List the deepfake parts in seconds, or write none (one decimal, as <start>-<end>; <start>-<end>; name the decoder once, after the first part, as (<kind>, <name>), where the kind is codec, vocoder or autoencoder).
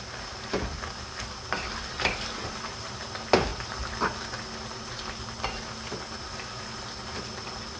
none